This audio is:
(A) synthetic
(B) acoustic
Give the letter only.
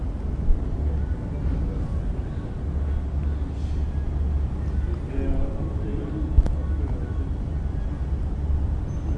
B